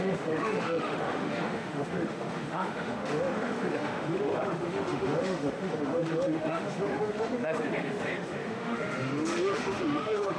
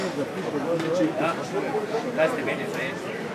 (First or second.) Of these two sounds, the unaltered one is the second